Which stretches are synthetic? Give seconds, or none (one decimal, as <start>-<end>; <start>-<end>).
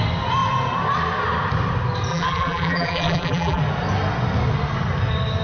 2.1-3.6